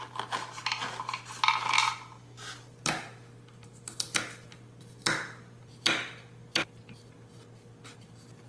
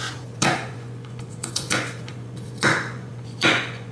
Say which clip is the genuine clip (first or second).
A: first